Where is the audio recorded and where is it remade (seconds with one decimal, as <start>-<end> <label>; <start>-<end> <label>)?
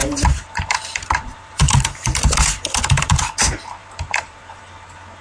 0.0-3.1 remade; 3.1-3.8 recorded; 3.8-4.6 remade; 4.6-5.2 recorded